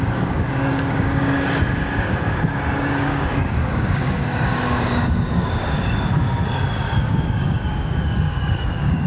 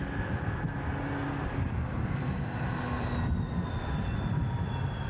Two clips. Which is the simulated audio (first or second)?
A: first